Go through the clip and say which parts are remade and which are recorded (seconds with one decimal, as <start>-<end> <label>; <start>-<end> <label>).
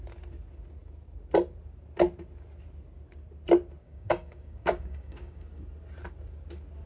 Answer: 0.0-3.8 recorded; 3.8-5.6 remade; 5.6-6.9 recorded